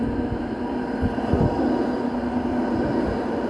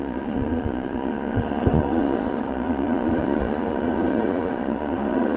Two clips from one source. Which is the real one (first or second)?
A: first